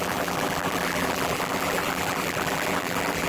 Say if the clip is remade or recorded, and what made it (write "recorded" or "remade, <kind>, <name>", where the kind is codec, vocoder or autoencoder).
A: remade, vocoder, BigVGAN v2